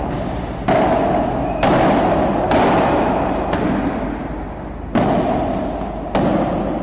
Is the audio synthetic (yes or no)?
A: no